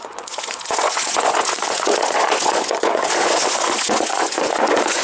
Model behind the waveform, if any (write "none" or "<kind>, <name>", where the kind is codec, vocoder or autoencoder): vocoder, Vocos